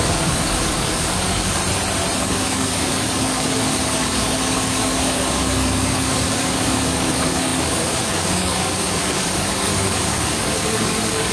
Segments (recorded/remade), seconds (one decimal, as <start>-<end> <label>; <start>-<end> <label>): 0.0-1.6 remade; 1.6-2.2 recorded; 2.2-11.3 remade